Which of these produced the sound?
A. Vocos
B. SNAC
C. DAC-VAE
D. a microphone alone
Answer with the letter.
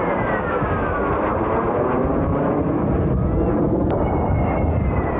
D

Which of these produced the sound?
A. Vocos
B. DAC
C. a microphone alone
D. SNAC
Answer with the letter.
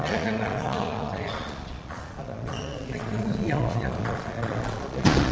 A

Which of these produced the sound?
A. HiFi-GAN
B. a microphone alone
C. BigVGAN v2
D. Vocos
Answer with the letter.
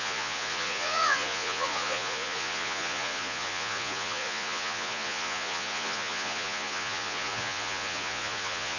D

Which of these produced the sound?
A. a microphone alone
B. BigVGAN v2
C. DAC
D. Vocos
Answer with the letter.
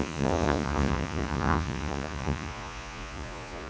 D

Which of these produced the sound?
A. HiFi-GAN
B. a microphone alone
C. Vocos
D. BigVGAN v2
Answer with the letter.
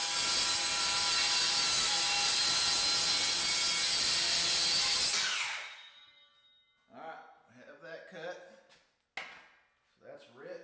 B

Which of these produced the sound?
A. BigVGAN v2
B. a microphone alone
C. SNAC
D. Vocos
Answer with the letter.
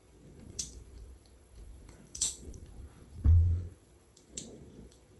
D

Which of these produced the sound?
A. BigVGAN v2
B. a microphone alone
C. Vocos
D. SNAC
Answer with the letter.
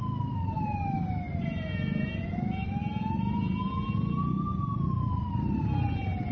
B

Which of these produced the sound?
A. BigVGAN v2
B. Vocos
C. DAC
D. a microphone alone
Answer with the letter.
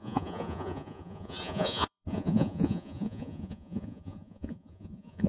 B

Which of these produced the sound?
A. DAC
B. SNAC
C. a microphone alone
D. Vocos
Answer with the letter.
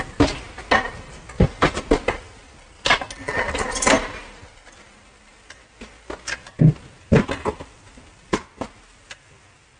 C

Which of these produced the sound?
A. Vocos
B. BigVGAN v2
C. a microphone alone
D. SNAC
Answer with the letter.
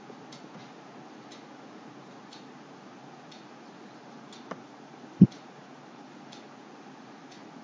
A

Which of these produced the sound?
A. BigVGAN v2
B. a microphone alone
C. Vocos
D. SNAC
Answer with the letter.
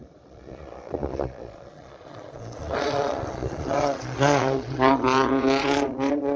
C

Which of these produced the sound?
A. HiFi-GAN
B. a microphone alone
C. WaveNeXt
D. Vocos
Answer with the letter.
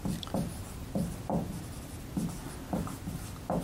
B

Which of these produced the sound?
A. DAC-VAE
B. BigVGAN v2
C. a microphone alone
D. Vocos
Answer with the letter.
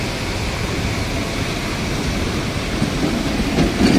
C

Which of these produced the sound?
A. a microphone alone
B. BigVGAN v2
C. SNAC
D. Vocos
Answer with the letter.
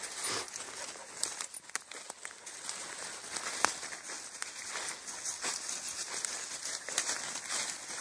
A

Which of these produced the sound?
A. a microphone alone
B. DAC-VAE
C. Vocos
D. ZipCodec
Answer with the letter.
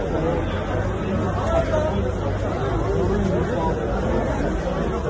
A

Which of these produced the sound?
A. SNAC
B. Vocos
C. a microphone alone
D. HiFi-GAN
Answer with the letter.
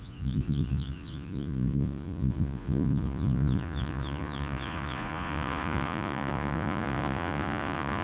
B